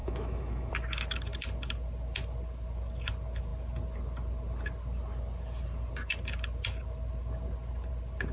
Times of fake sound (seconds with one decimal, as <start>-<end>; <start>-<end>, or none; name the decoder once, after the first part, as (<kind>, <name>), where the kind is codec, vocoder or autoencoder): 0.0-0.7 (autoencoder, DAC-VAE)